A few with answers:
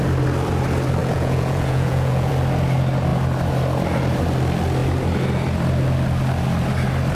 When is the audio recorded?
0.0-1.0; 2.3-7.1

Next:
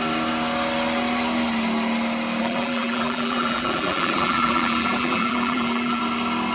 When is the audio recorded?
0.0-2.4; 6.0-6.5

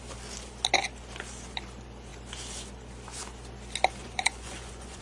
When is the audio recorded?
0.0-4.0

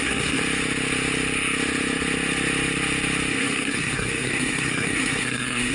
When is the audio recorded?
0.4-3.3